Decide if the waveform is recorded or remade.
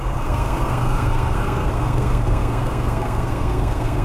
remade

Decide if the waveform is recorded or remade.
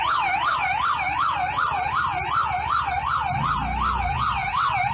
recorded